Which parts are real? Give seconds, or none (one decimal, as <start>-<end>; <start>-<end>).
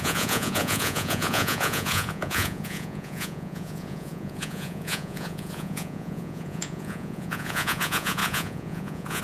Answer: none